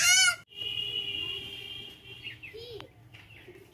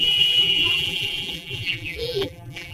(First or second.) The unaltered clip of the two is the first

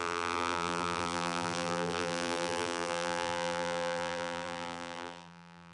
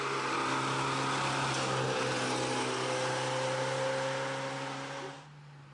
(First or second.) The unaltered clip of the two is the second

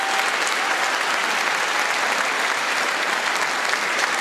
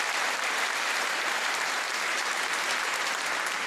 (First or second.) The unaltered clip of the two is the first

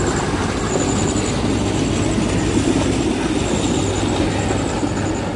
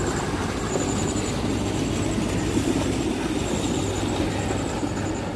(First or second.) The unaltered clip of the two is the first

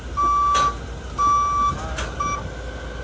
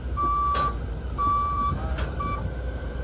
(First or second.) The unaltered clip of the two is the first